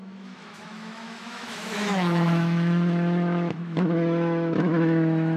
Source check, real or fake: fake